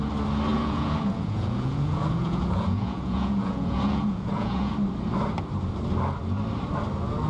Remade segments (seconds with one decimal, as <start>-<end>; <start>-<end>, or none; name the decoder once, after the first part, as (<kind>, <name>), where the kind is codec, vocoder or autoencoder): 0.5-4.7 (vocoder, Vocos)